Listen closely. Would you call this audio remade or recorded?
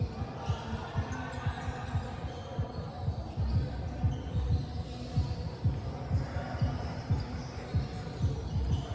recorded